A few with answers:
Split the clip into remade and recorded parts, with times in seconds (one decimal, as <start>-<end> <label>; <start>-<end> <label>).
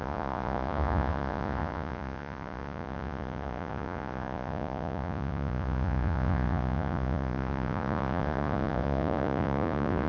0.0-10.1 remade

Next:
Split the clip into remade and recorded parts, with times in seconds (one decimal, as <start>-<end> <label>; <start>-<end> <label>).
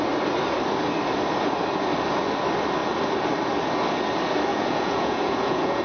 0.0-4.5 recorded; 4.5-5.8 remade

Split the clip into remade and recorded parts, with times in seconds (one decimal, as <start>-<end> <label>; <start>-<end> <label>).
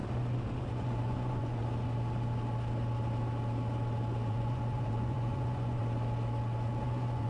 0.0-0.6 recorded; 0.6-1.6 remade; 1.6-4.3 recorded; 4.3-5.8 remade; 5.8-6.8 recorded; 6.8-7.3 remade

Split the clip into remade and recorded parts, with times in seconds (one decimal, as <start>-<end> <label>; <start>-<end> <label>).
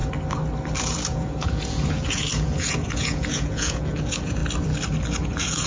0.0-0.8 recorded; 0.8-4.4 remade; 4.4-5.2 recorded; 5.2-5.7 remade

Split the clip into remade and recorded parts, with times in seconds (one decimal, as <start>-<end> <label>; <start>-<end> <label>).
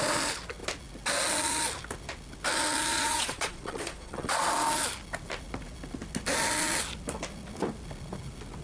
0.0-2.9 recorded; 2.9-4.5 remade; 4.5-8.6 recorded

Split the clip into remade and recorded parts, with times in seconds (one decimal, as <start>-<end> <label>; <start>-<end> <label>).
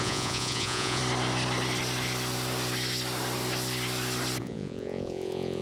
0.0-1.0 remade; 1.0-4.4 recorded; 4.4-5.6 remade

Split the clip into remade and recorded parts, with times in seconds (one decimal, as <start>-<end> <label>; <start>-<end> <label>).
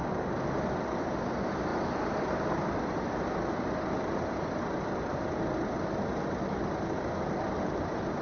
0.0-8.2 recorded